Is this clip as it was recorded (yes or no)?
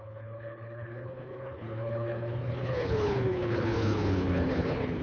no